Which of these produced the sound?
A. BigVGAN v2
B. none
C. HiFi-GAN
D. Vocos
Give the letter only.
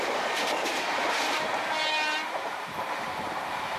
A